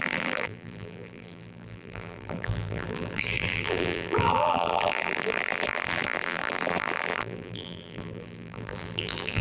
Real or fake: fake